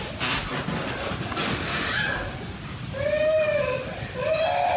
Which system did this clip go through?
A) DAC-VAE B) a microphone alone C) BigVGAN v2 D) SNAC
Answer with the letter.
B